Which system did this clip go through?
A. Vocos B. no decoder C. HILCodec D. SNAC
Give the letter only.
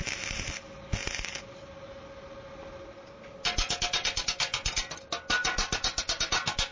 B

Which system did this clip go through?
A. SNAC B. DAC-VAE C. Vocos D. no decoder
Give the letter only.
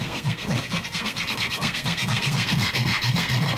A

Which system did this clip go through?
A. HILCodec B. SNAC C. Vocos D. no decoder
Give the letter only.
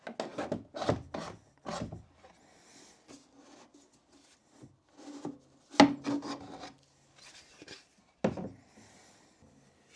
D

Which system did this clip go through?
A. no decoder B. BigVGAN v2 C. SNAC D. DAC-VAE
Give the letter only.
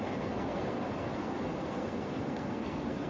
C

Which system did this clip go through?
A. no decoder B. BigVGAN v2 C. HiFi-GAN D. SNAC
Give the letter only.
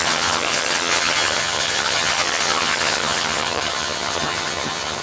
C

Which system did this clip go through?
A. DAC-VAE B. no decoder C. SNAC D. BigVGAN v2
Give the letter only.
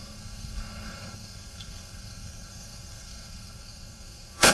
C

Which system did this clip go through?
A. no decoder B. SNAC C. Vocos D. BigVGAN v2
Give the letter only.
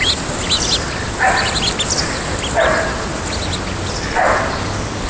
A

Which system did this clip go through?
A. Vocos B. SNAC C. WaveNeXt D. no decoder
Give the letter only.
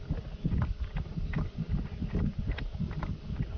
D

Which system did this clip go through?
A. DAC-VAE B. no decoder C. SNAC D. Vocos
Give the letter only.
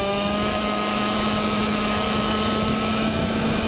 A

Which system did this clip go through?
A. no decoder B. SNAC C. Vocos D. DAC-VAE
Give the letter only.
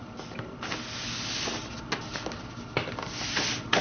A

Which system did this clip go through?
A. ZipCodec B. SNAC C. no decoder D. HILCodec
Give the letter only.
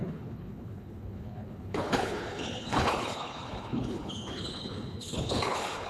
D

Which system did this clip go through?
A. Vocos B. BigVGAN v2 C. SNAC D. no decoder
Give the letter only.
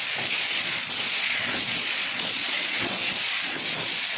A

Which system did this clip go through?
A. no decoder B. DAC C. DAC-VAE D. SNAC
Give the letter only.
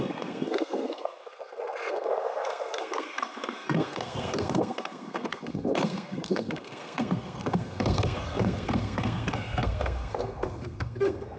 D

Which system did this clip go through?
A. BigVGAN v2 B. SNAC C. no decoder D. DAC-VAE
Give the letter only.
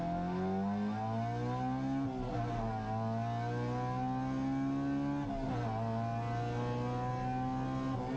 C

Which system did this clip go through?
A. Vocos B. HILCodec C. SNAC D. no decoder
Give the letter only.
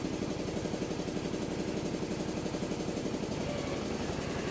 D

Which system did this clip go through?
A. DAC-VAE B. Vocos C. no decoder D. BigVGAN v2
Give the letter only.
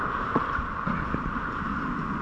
C